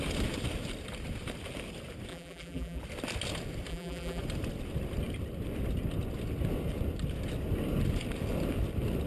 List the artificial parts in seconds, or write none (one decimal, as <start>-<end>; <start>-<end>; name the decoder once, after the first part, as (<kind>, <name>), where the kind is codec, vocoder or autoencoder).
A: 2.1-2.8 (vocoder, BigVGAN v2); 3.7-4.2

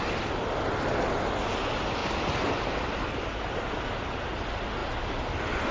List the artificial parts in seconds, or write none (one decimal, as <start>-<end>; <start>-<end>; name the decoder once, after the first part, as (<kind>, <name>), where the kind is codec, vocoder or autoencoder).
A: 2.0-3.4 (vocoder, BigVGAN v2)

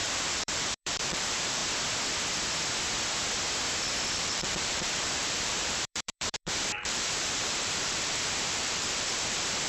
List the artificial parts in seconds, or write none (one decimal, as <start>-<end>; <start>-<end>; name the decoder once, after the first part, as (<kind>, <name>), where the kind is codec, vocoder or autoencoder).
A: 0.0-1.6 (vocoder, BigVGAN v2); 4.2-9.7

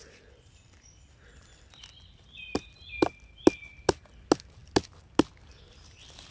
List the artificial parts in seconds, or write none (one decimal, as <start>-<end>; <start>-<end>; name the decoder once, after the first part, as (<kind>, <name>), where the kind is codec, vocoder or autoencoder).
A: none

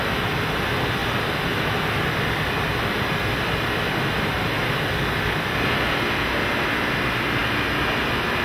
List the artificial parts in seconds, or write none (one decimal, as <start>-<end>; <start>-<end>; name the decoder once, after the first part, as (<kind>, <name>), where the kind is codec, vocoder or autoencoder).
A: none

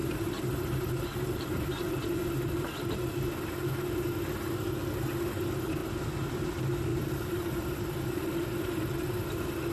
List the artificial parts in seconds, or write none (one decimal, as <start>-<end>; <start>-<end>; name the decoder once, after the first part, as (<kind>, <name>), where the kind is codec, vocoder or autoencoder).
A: 0.0-1.7 (vocoder, BigVGAN v2); 6.9-8.7

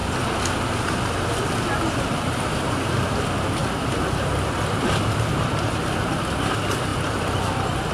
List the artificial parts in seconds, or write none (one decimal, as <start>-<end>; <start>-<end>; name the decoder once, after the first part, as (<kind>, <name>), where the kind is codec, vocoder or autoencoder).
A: 3.6-6.2 (vocoder, BigVGAN v2); 6.9-7.4

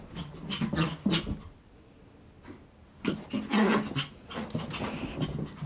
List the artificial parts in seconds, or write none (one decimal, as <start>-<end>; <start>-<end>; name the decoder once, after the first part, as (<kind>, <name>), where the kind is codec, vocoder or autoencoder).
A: none